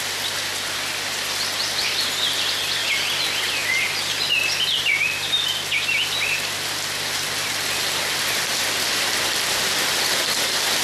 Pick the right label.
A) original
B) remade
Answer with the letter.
A